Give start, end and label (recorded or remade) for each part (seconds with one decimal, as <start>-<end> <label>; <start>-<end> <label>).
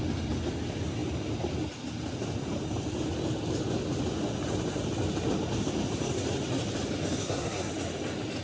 0.0-7.2 recorded; 7.2-7.7 remade; 7.7-8.4 recorded